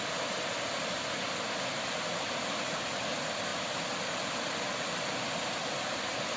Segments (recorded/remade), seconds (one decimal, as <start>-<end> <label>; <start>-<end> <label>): 0.0-6.4 recorded